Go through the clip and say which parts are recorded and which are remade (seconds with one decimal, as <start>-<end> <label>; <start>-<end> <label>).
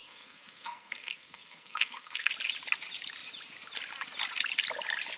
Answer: 0.0-2.3 remade; 2.3-5.2 recorded